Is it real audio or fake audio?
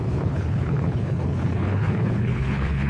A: fake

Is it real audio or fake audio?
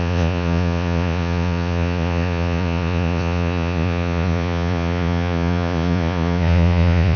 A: fake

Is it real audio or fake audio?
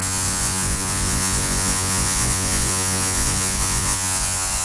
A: fake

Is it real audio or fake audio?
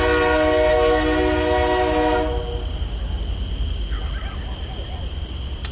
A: real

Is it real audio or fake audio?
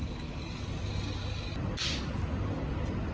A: real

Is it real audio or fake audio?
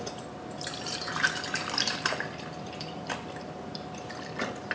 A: fake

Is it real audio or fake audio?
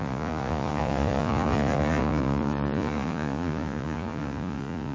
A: fake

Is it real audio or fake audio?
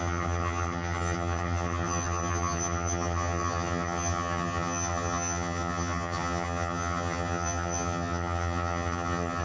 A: fake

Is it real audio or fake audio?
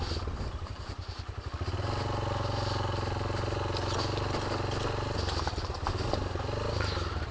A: real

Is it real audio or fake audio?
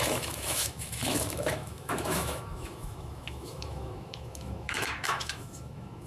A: fake